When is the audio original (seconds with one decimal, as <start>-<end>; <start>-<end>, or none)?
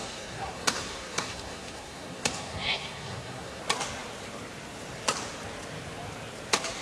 3.6-6.8